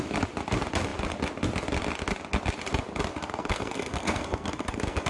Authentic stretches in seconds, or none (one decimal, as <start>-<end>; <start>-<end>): 0.0-3.1